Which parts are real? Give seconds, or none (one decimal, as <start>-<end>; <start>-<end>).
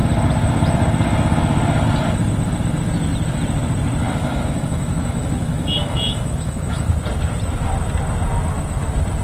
0.0-4.0; 6.9-9.2